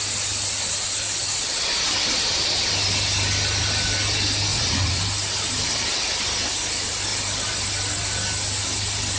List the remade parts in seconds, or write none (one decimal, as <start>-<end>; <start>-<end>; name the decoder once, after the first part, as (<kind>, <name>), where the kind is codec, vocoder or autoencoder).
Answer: 4.5-5.0 (vocoder, Vocos)